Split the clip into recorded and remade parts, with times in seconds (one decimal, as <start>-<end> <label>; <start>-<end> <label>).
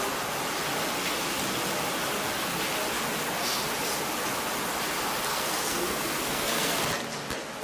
0.0-5.3 recorded; 5.3-6.8 remade; 6.8-7.6 recorded